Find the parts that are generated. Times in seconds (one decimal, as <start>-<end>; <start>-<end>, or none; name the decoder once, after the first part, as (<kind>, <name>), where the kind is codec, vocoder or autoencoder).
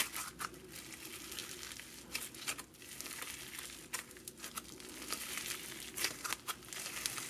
none